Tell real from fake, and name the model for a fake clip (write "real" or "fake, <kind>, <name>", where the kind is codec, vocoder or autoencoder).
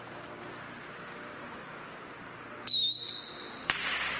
real